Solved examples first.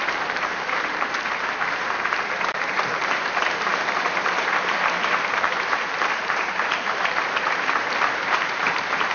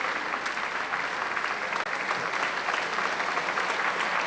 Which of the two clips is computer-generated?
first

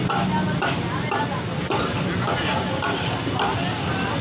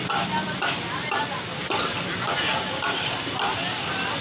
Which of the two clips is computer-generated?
second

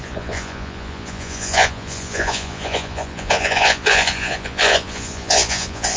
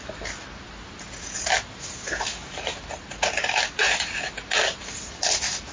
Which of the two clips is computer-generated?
first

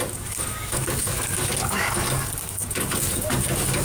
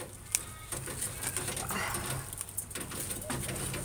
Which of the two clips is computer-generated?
first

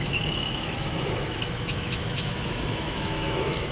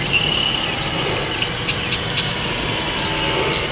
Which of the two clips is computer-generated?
first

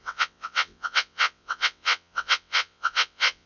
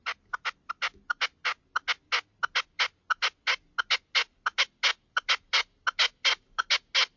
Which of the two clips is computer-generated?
first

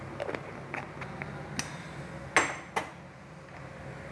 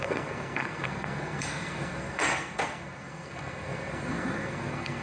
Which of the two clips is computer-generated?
second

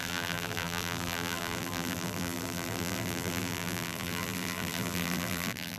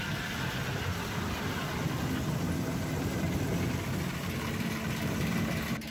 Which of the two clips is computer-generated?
first